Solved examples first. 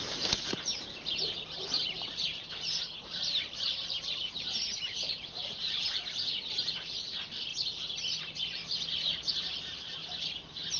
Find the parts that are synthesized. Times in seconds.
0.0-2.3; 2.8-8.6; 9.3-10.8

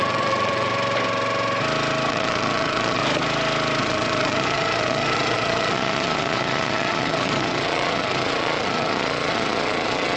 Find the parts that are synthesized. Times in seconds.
0.0-0.7; 2.1-3.0; 3.8-10.2

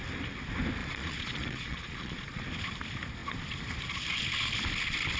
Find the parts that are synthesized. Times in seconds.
0.8-2.4

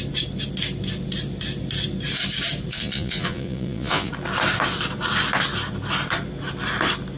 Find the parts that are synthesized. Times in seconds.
2.7-4.1